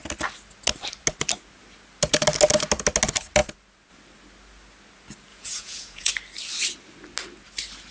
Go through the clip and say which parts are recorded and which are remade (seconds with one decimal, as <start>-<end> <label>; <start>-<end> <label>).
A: 0.0-5.3 recorded; 5.3-6.1 remade; 6.1-7.9 recorded